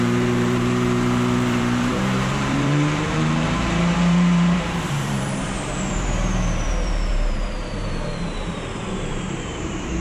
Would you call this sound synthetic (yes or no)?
yes